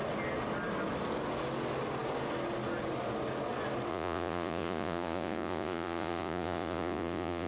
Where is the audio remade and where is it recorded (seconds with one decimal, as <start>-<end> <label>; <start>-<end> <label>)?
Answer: 0.0-3.9 recorded; 3.9-7.5 remade

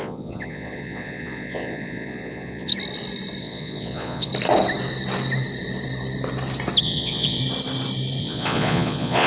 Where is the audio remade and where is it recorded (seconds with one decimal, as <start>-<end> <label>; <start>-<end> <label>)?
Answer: 0.0-2.7 remade; 2.7-3.4 recorded; 3.4-4.3 remade; 4.3-6.8 recorded; 6.8-7.4 remade; 7.4-8.2 recorded; 8.2-9.3 remade

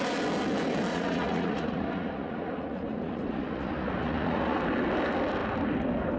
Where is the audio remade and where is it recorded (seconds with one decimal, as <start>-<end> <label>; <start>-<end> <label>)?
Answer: 0.0-0.9 recorded; 0.9-4.6 remade; 4.6-6.2 recorded